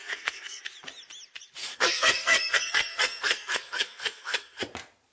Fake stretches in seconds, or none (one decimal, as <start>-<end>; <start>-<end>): 0.0-0.6; 1.6-4.6